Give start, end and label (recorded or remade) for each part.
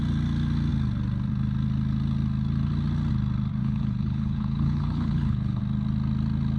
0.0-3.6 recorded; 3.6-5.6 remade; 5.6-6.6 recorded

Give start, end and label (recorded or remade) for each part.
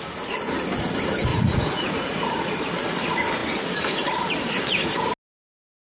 0.0-1.3 recorded; 1.3-2.6 remade; 2.6-5.8 recorded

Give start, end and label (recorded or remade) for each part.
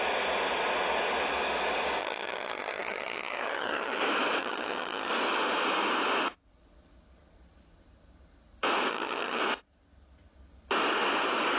0.0-2.0 recorded; 2.0-4.0 remade; 4.0-4.4 recorded; 4.4-5.1 remade; 5.1-8.9 recorded; 8.9-9.4 remade; 9.4-11.6 recorded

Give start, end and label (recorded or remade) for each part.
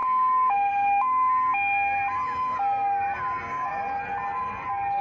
0.0-5.0 recorded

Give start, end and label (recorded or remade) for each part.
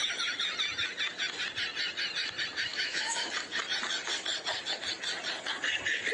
0.0-2.7 recorded; 2.7-3.3 remade; 3.3-6.1 recorded